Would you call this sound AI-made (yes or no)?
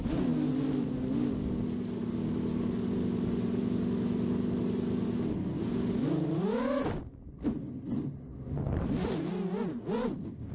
no